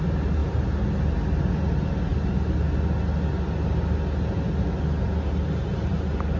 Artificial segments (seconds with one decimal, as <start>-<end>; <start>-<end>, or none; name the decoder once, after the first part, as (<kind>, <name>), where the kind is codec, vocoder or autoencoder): none